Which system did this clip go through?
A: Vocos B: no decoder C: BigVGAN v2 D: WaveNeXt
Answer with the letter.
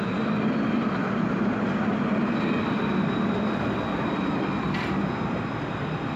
B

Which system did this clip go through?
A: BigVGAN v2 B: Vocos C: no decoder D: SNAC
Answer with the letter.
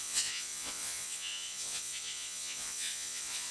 B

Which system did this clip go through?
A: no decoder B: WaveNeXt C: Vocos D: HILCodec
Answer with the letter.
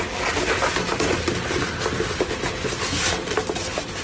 A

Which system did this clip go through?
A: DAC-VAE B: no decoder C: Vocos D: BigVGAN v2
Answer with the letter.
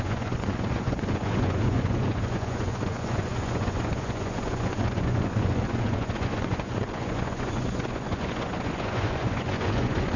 C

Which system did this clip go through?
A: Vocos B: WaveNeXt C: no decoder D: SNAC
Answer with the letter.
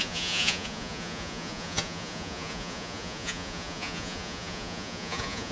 A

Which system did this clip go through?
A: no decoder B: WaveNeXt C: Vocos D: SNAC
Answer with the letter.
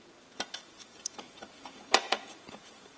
C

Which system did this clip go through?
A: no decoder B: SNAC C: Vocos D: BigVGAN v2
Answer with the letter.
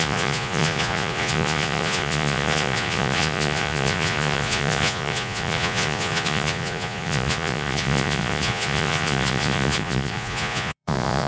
C